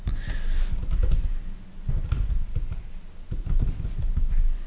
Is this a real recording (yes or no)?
yes